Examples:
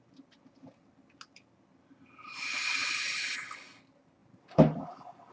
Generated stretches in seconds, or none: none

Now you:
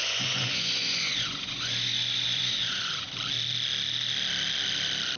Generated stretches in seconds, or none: 0.0-3.1 (vocoder, Vocos)

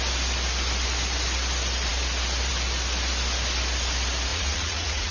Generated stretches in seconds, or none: 4.3-5.1 (vocoder, Vocos)

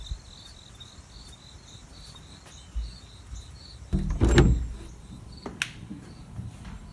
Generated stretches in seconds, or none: none

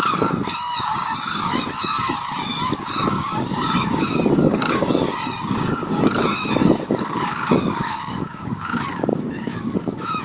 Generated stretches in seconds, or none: 0.0-10.2 (codec, DAC)

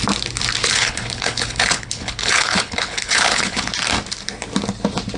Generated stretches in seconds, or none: 0.6-3.7 (codec, HILCodec)

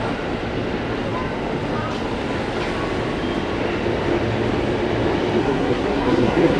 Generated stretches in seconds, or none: 5.4-6.6 (codec, SNAC)

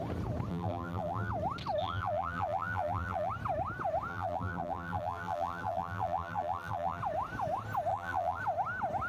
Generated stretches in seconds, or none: 0.5-1.3 (vocoder, BigVGAN v2); 1.8-3.3; 4.1-7.0; 7.9-8.4